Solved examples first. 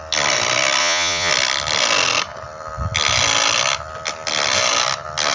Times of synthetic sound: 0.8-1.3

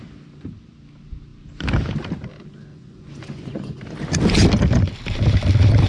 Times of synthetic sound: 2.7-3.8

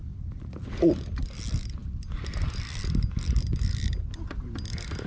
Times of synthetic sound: none